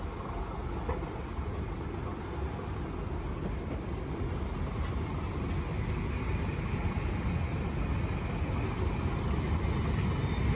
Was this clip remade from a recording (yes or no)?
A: no